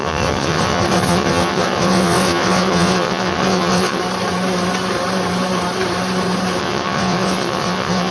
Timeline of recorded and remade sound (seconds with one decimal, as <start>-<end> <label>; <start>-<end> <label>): 0.0-4.0 remade; 4.0-6.6 recorded; 6.6-8.1 remade

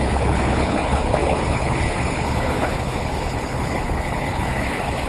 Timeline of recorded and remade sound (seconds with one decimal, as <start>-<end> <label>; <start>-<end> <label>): 0.0-5.1 remade

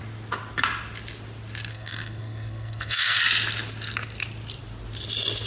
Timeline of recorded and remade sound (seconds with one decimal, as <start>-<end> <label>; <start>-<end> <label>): 0.0-1.7 recorded; 1.7-3.2 remade; 3.2-5.5 recorded

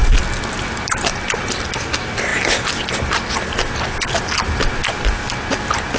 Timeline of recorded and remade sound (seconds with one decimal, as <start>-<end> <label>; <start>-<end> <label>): 0.0-6.0 recorded

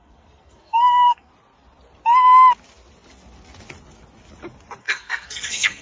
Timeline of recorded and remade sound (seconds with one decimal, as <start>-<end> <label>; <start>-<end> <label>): 0.0-1.3 remade; 1.3-4.8 recorded; 4.8-5.8 remade

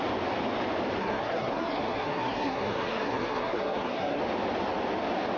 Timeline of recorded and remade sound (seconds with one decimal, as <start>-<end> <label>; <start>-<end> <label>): 0.0-1.0 recorded; 1.0-4.2 remade; 4.2-5.4 recorded

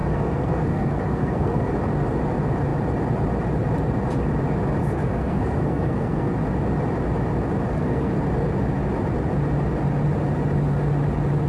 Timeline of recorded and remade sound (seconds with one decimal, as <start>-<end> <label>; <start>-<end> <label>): 0.0-1.7 remade; 1.7-4.8 recorded; 4.8-6.3 remade; 6.3-7.7 recorded; 7.7-8.2 remade; 8.2-11.5 recorded